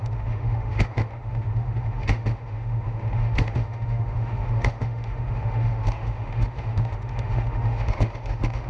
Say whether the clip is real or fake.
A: fake